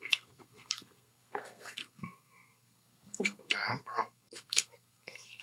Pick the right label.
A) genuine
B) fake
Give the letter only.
B